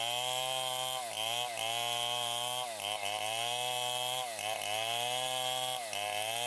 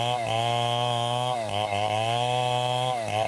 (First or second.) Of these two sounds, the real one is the first